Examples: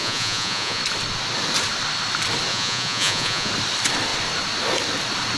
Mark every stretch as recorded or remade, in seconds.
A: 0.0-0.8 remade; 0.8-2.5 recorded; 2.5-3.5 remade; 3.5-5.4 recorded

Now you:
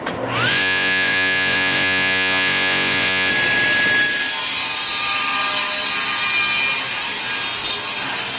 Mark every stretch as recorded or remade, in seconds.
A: 0.0-0.5 recorded; 0.5-3.3 remade; 3.3-8.4 recorded

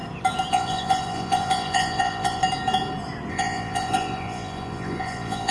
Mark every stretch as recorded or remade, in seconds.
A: 0.0-0.5 recorded; 0.5-2.4 remade; 2.4-3.3 recorded; 3.3-5.5 remade

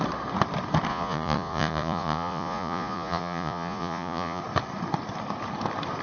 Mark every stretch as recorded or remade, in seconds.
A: 0.0-0.9 recorded; 0.9-4.4 remade; 4.4-6.0 recorded

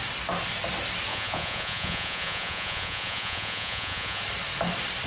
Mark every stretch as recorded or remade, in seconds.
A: 0.0-1.1 recorded; 1.1-4.2 remade; 4.2-5.1 recorded

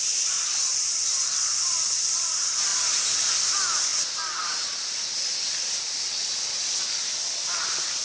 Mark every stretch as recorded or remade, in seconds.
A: 0.0-8.0 recorded

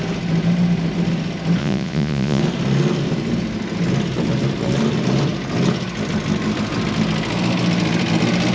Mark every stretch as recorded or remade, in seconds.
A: 0.0-1.6 recorded; 1.6-2.4 remade; 2.4-8.5 recorded

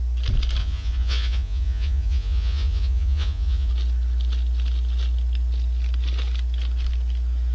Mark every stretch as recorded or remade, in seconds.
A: 0.0-0.6 recorded; 0.6-3.7 remade; 3.7-7.5 recorded